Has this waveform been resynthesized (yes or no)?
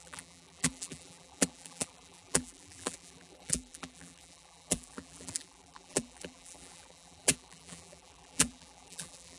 yes